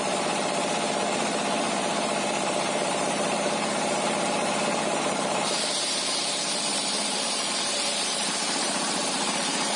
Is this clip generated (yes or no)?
yes